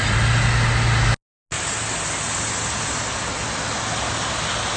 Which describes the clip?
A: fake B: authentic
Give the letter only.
B